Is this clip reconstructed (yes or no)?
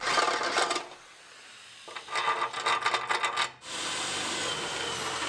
no